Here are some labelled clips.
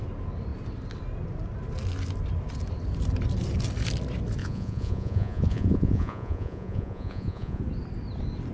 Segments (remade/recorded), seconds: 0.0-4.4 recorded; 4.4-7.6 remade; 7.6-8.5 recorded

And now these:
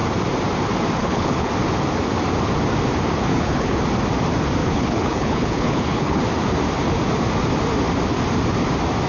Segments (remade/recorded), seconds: 0.0-1.0 recorded; 1.0-1.5 remade; 1.5-3.3 recorded; 3.3-3.8 remade; 3.8-4.6 recorded; 4.6-6.2 remade; 6.2-9.1 recorded

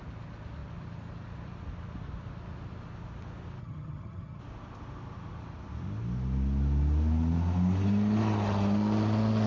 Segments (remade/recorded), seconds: 0.0-3.6 recorded; 3.6-4.4 remade; 4.4-9.5 recorded